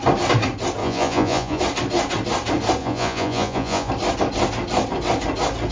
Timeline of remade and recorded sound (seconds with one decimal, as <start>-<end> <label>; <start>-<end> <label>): 0.0-0.8 recorded; 0.8-1.6 remade; 1.6-2.8 recorded; 2.8-3.9 remade; 3.9-5.7 recorded